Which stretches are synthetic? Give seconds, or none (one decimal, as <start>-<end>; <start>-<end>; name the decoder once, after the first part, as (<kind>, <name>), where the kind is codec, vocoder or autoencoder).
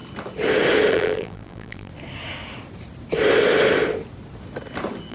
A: 0.9-1.9 (vocoder, BigVGAN v2)